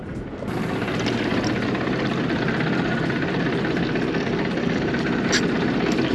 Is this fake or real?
real